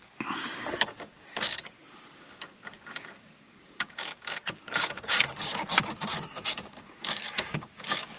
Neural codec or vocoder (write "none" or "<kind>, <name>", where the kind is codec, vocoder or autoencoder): codec, DAC